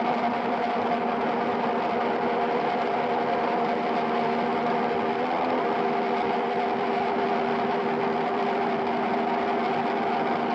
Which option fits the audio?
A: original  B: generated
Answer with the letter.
A